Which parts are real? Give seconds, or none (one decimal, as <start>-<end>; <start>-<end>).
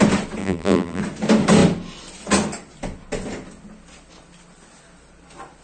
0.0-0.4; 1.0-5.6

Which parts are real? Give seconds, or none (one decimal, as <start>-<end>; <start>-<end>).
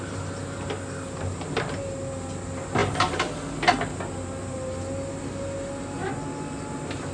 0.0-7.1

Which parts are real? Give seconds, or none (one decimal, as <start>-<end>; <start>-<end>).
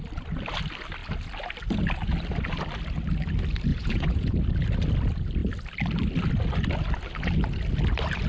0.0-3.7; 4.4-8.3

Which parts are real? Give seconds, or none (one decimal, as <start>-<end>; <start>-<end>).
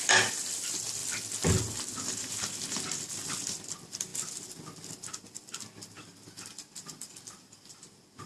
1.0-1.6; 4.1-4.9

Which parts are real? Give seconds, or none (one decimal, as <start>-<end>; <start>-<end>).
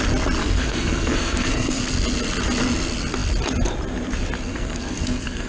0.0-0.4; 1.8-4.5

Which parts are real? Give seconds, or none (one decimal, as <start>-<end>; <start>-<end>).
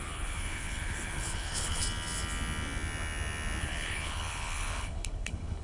1.8-3.6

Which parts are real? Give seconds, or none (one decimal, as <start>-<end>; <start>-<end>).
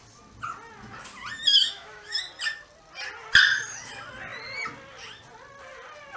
0.0-1.5; 2.2-6.2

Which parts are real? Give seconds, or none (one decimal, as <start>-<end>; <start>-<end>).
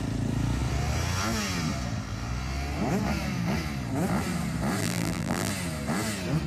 0.0-4.8; 5.5-6.5